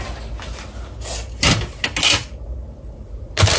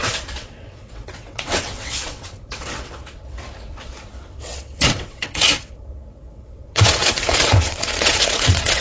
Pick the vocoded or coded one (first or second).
second